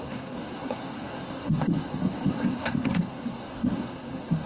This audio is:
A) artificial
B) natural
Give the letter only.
A